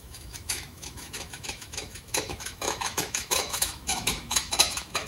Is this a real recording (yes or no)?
no